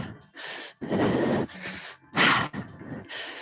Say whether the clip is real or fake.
real